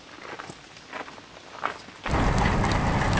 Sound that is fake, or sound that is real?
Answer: real